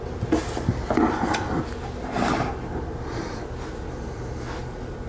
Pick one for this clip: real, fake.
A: real